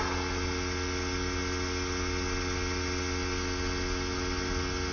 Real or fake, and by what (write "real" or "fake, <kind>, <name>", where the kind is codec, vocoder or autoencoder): real